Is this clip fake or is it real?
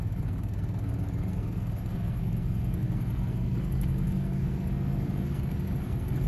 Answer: fake